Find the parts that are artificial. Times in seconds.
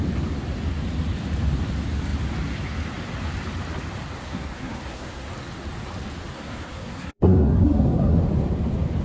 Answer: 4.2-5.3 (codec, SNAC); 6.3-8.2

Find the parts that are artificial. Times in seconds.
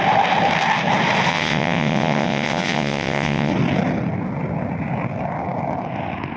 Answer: 1.3-3.5 (vocoder, WaveNeXt)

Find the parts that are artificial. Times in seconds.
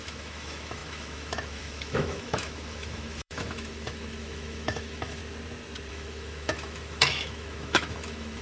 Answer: 0.0-5.2 (autoencoder, DAC-VAE); 5.9-8.4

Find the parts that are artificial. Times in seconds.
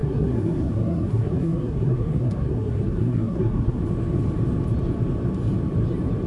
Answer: 0.0-3.8 (codec, SNAC)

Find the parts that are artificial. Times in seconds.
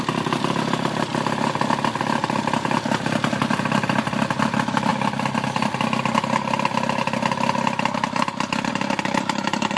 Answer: 0.0-1.1 (vocoder, BigVGAN v2); 2.0-4.9; 8.7-9.8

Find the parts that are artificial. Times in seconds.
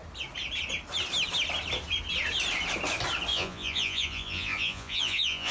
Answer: 3.3-5.5 (vocoder, Vocos)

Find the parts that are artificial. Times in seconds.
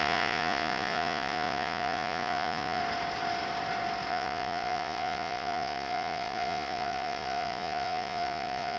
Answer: 0.0-2.8 (vocoder, Vocos); 4.1-8.8